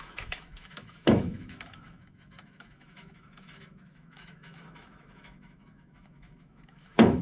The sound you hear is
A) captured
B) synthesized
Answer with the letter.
B